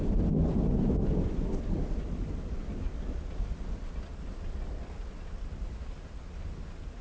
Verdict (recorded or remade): recorded